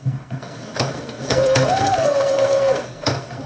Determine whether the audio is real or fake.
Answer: fake